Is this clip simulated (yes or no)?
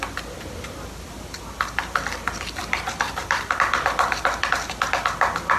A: no